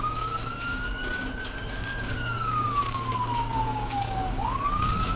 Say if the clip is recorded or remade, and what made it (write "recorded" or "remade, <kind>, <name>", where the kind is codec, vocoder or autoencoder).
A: remade, codec, DAC